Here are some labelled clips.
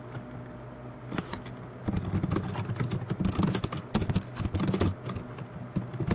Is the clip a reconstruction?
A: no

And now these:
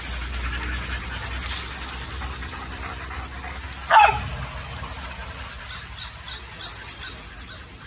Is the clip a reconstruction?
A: no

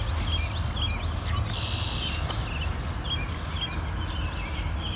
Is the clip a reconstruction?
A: no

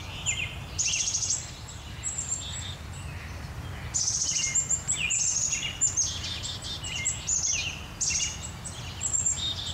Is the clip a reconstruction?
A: no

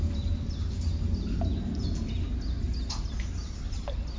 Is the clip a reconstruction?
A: no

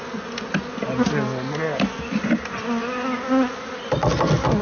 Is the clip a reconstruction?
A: no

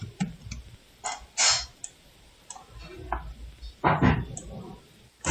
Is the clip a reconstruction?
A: no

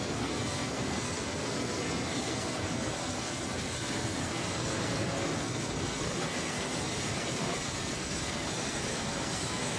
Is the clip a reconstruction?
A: yes